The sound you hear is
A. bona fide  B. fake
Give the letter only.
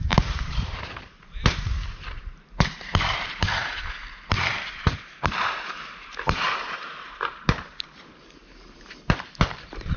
B